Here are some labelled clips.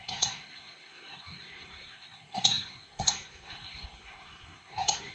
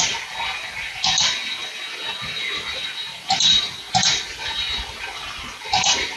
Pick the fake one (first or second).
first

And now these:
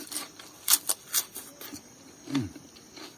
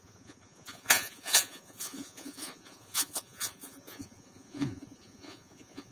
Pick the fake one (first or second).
second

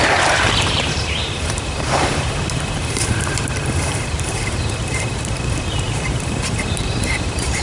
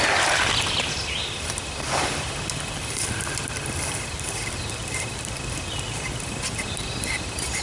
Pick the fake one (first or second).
first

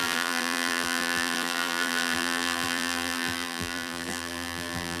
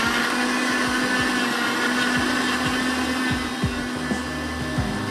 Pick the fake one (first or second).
first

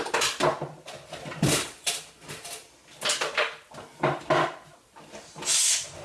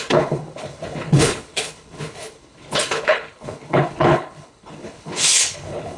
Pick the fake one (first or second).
second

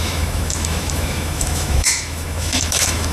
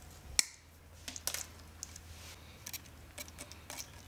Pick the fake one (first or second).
first